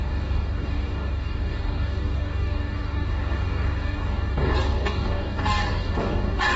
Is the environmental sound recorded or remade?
remade